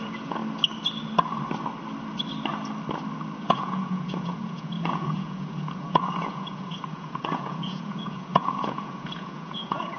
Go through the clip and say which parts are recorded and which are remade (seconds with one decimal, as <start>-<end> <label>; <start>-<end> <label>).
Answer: 0.0-0.4 remade; 0.4-3.4 recorded; 3.4-10.0 remade